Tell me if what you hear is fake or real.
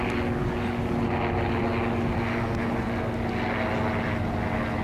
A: real